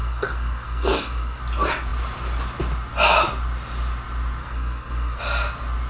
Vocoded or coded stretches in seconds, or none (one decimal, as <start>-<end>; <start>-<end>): 0.0-1.4; 4.4-5.2